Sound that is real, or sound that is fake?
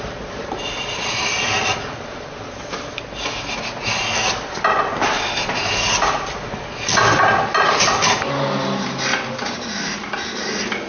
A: real